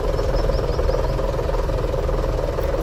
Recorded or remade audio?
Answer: recorded